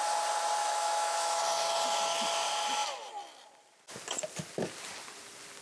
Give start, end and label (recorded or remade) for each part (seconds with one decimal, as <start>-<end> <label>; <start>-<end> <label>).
0.0-0.6 recorded; 0.6-1.4 remade; 1.4-5.6 recorded